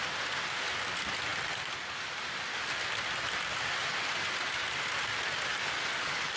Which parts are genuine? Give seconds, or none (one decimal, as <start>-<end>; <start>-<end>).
0.0-6.4

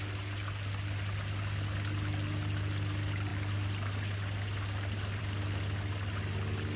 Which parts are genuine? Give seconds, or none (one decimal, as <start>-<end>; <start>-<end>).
0.0-6.8